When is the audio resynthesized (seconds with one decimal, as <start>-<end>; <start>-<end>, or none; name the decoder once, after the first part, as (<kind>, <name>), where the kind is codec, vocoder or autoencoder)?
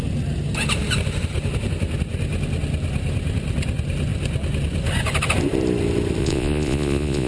6.2-7.3 (vocoder, Vocos)